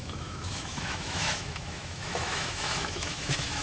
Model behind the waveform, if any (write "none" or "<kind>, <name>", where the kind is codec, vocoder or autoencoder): autoencoder, DAC-VAE